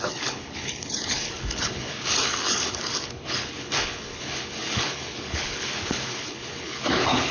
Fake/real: fake